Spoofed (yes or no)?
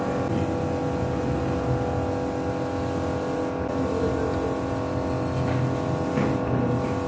no